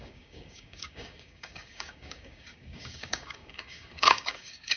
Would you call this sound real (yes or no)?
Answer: no